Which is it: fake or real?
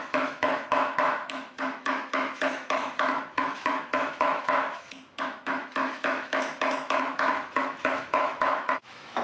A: fake